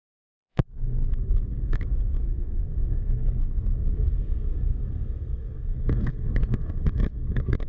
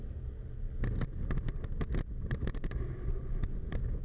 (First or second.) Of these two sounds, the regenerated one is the first